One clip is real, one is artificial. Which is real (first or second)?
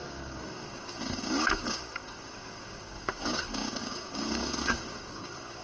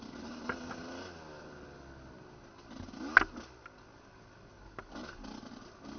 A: second